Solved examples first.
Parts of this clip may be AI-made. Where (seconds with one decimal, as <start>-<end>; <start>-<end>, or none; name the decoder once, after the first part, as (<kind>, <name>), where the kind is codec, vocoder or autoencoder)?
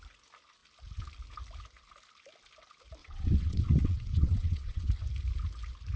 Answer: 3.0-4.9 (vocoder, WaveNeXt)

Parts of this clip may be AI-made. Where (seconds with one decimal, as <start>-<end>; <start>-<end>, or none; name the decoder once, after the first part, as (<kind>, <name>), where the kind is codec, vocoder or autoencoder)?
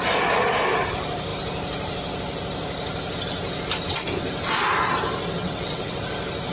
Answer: 5.4-6.0 (vocoder, WaveNeXt)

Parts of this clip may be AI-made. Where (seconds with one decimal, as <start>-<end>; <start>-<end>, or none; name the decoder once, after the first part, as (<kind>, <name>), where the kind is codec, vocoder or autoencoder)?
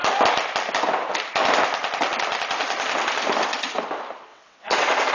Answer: 4.3-5.1 (vocoder, WaveNeXt)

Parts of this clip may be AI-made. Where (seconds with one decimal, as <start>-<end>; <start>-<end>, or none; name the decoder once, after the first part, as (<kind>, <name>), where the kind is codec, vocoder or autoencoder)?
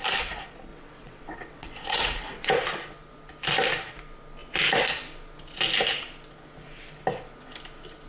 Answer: 0.7-2.5 (vocoder, WaveNeXt)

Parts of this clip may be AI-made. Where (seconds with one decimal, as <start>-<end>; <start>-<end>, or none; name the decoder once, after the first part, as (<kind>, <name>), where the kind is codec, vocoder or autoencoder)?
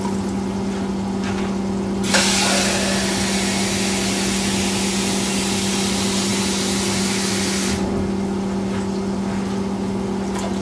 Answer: none